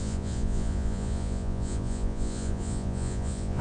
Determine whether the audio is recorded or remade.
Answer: remade